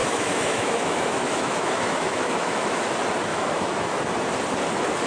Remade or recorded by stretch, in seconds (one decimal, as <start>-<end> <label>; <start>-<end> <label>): 0.0-2.8 remade; 2.8-3.3 recorded; 3.3-4.0 remade; 4.0-5.1 recorded